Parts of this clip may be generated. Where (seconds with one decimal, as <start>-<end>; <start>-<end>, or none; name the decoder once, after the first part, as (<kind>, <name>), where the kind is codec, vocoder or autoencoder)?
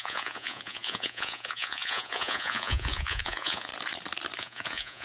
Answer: 0.0-3.7 (vocoder, Vocos); 4.4-5.0